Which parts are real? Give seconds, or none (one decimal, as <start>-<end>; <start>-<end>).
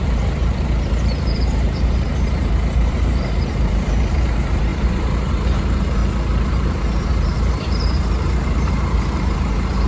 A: 6.0-6.5